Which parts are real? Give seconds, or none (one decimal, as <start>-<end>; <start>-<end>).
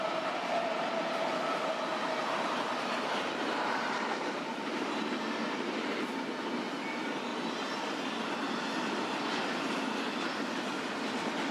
0.0-1.9; 5.1-11.5